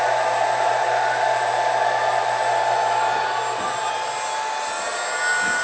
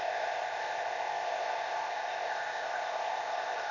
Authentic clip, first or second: first